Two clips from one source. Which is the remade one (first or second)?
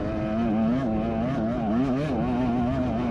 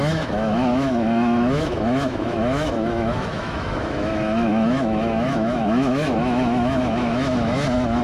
second